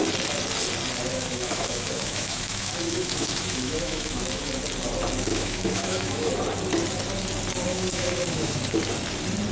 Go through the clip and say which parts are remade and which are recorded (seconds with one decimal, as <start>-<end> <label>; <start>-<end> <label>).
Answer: 0.0-1.1 recorded; 1.1-4.4 remade; 4.4-5.3 recorded; 5.3-6.3 remade; 6.3-7.7 recorded; 7.7-8.8 remade; 8.8-9.5 recorded